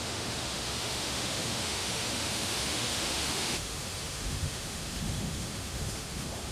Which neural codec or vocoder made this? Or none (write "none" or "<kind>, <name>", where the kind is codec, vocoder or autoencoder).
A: autoencoder, DAC-VAE